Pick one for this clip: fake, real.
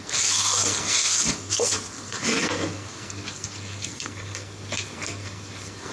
fake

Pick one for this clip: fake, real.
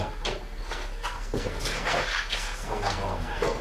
fake